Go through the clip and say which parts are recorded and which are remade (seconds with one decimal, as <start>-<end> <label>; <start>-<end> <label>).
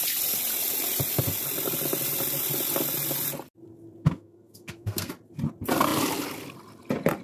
0.0-4.0 recorded; 4.0-5.1 remade; 5.1-7.2 recorded